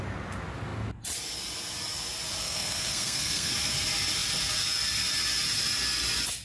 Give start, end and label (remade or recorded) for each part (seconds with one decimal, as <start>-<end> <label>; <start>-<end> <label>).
0.0-2.4 recorded; 2.4-3.5 remade; 3.5-6.4 recorded